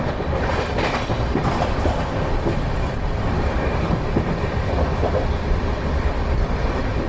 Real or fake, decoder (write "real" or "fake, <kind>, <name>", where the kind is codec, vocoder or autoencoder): real